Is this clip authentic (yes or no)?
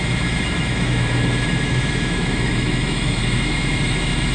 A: no